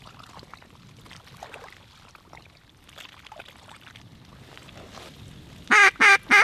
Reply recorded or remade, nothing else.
recorded